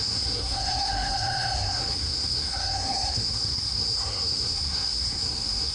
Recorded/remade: remade